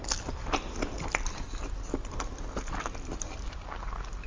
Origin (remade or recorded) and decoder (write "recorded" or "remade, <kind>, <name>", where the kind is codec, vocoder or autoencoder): recorded